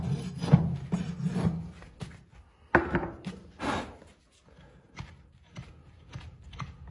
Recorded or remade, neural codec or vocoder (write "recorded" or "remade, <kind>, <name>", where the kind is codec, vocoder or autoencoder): recorded